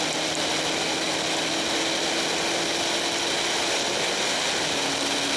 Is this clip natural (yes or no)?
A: yes